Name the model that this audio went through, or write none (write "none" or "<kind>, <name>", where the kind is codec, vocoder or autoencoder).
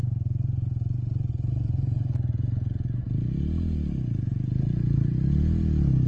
none